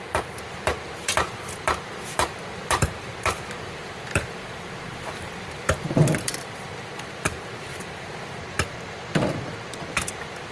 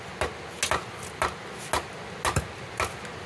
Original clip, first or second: second